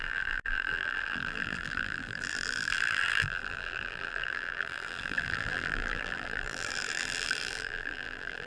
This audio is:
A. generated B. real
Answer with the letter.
A